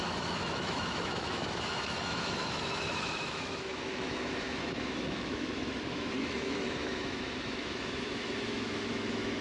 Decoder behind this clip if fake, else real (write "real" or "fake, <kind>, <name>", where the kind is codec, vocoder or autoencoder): fake, autoencoder, DAC-VAE